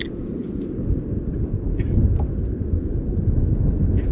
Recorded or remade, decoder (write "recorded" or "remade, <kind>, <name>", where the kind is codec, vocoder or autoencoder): recorded